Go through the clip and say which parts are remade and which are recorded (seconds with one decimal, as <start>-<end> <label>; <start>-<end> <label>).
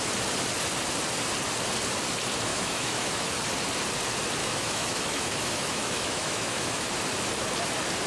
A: 0.0-2.5 recorded; 2.5-3.3 remade; 3.3-4.4 recorded; 4.4-6.9 remade; 6.9-8.1 recorded